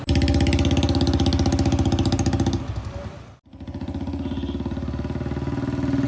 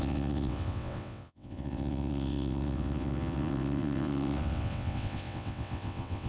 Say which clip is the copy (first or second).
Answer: second